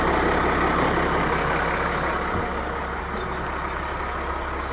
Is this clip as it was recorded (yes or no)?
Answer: yes